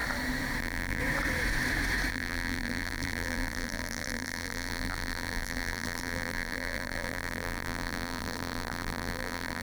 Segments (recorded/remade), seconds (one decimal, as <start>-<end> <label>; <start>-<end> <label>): 0.0-0.6 recorded; 0.6-1.0 remade; 1.0-2.1 recorded; 2.1-9.6 remade